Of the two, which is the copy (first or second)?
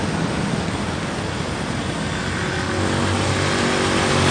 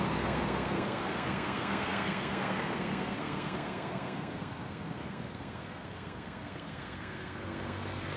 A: second